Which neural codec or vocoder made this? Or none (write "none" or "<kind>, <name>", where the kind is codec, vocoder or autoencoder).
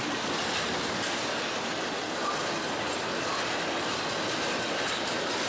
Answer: none